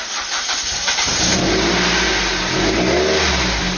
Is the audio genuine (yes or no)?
yes